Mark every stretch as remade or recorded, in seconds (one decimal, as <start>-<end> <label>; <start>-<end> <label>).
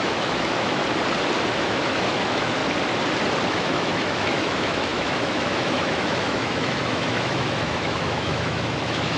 0.0-0.8 remade; 0.8-1.6 recorded; 1.6-2.6 remade; 2.6-3.5 recorded; 3.5-9.2 remade